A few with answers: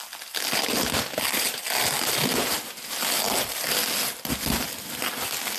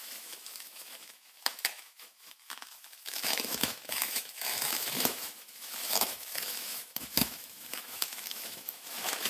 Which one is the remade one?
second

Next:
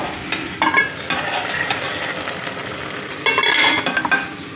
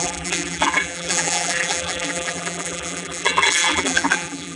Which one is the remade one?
second